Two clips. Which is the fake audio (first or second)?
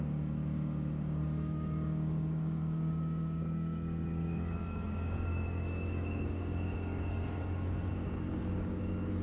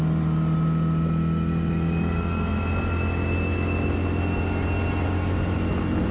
first